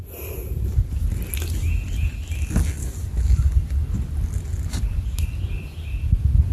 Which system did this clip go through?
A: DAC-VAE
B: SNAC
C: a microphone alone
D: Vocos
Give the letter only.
C